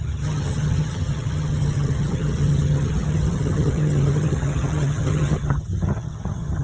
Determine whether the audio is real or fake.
fake